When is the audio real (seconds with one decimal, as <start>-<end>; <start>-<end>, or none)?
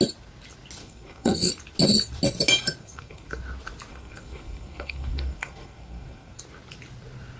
0.0-0.8; 1.5-2.8; 3.4-3.9; 6.4-7.4